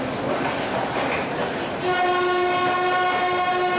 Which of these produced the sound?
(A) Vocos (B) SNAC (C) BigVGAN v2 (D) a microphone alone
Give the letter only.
D